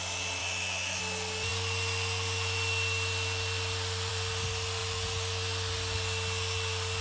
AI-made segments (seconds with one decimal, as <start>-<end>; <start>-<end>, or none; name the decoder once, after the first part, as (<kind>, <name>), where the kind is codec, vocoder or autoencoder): 0.4-1.0 (autoencoder, DAC-VAE)